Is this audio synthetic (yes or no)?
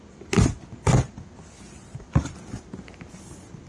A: no